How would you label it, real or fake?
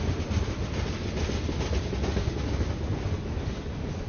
real